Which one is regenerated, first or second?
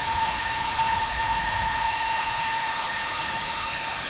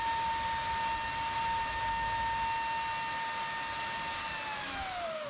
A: first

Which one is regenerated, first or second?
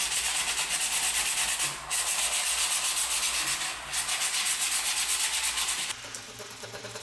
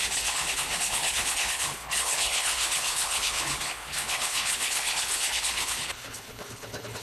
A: second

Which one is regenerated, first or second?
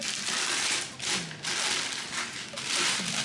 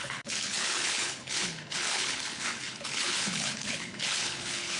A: second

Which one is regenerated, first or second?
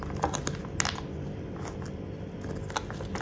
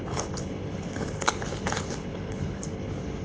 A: second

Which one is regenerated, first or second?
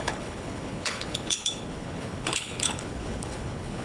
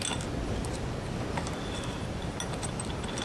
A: first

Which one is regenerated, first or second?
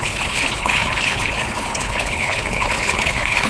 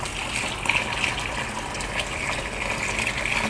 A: first